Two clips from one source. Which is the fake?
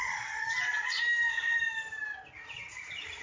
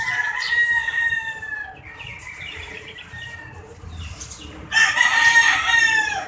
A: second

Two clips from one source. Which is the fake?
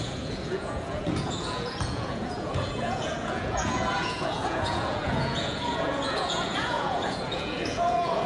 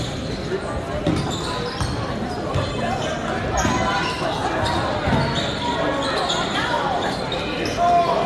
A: first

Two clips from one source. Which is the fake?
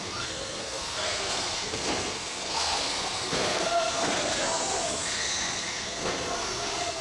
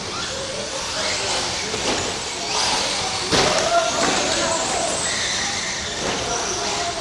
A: first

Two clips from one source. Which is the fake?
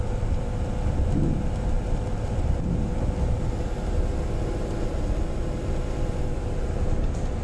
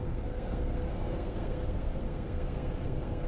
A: second